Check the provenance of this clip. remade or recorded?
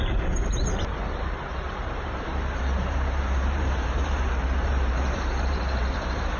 remade